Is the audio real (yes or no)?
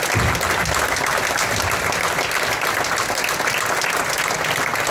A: yes